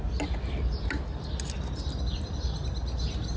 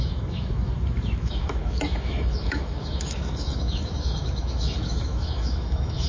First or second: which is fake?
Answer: second